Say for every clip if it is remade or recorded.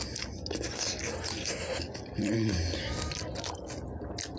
recorded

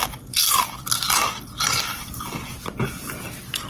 recorded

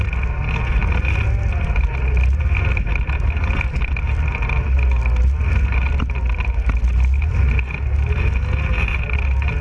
recorded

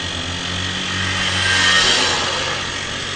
recorded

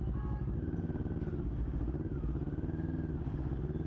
recorded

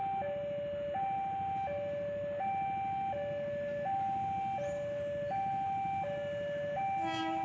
recorded